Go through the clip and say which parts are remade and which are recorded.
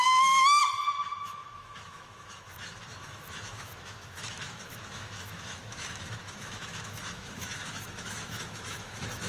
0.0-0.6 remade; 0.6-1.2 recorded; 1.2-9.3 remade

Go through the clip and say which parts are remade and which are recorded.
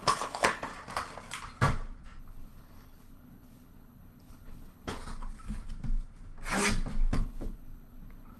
0.0-0.7 remade; 0.7-2.2 recorded; 2.2-5.0 remade; 5.0-7.2 recorded; 7.2-8.4 remade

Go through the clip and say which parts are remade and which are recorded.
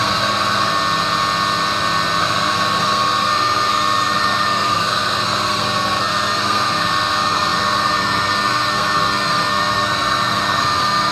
0.0-0.7 remade; 0.7-2.2 recorded; 2.2-11.1 remade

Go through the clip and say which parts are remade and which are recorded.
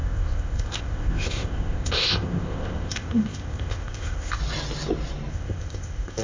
0.0-4.4 remade; 4.4-5.3 recorded; 5.3-6.2 remade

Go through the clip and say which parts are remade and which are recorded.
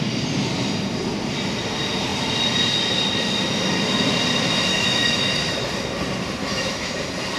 0.0-4.7 recorded; 4.7-5.7 remade; 5.7-6.4 recorded; 6.4-6.9 remade; 6.9-7.4 recorded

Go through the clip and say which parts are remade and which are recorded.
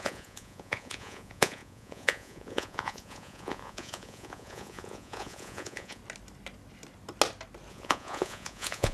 0.0-6.0 remade; 6.0-7.7 recorded; 7.7-8.9 remade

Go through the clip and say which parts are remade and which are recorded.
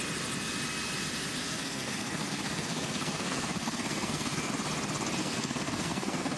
0.0-1.4 recorded; 1.4-4.5 remade; 4.5-5.2 recorded; 5.2-6.4 remade